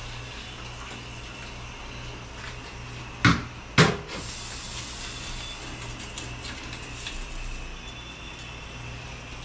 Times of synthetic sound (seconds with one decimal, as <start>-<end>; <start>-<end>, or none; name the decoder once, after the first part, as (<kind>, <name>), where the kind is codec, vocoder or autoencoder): none